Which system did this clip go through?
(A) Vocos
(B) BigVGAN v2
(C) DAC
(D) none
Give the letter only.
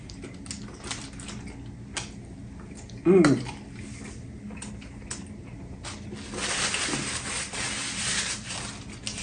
D